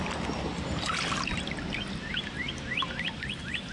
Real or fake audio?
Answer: real